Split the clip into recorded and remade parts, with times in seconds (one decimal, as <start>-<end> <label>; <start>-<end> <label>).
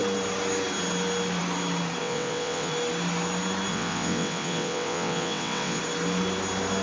0.0-2.0 recorded; 2.0-2.7 remade; 2.7-3.7 recorded; 3.7-5.8 remade; 5.8-6.8 recorded